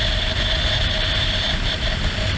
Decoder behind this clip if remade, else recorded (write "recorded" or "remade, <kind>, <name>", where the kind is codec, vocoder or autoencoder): recorded